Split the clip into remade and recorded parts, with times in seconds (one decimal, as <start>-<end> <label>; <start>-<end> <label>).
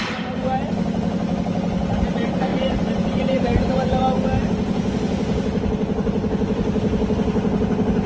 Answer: 0.0-2.5 recorded; 2.5-4.0 remade; 4.0-8.1 recorded